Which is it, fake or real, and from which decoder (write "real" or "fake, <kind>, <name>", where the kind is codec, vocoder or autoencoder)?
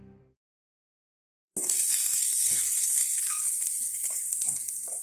fake, codec, SNAC